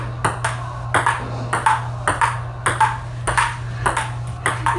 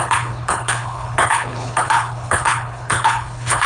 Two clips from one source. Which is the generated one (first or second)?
second